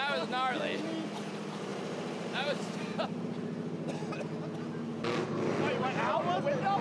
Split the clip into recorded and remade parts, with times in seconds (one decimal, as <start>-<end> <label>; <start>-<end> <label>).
0.0-1.7 recorded; 1.7-3.2 remade; 3.2-6.8 recorded